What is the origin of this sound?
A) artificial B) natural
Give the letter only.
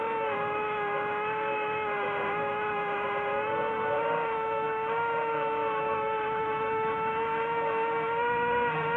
A